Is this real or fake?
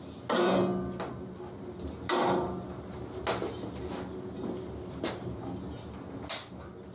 real